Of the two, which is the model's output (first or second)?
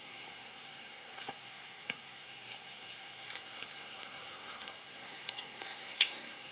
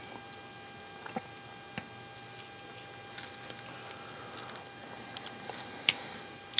first